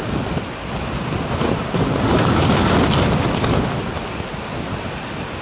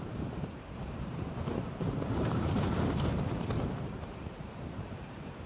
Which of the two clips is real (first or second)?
first